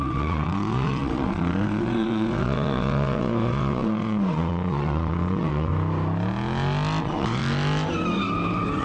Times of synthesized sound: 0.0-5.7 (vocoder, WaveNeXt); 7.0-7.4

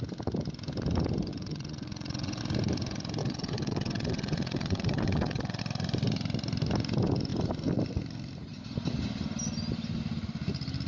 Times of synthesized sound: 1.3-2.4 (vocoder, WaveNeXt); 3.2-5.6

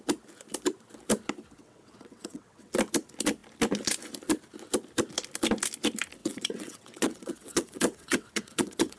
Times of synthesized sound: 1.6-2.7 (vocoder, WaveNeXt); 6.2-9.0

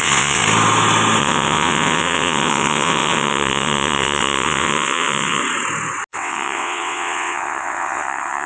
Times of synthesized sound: 0.0-0.4 (vocoder, WaveNeXt); 1.2-5.4; 6.1-8.5

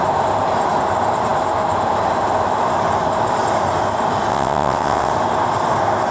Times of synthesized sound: 4.3-5.1 (vocoder, WaveNeXt)